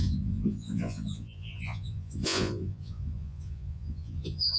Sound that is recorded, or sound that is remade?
remade